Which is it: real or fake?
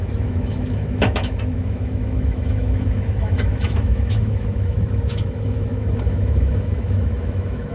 fake